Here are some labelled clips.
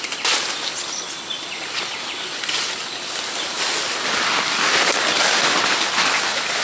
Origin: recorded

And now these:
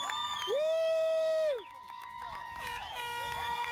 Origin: remade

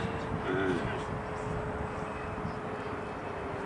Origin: recorded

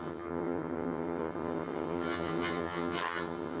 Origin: remade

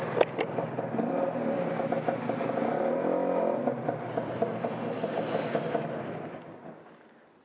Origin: recorded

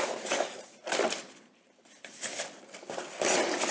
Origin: recorded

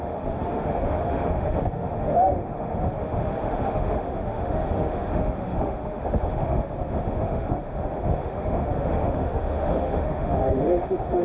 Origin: remade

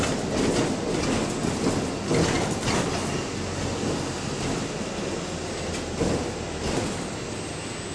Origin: recorded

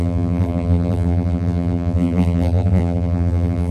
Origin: remade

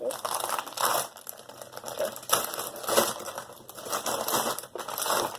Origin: recorded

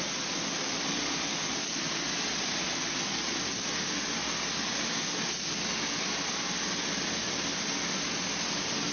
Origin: recorded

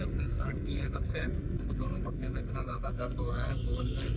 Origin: remade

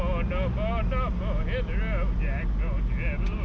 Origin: recorded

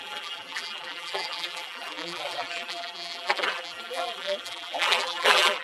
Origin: remade